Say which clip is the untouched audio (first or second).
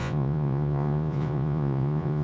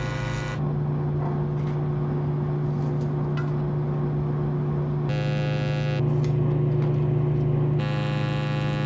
second